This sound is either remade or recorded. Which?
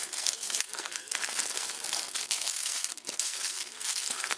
remade